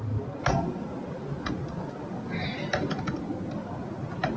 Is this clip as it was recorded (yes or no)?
yes